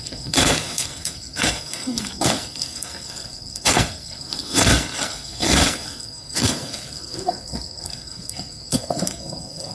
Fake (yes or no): yes